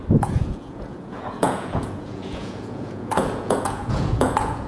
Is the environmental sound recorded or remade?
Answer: remade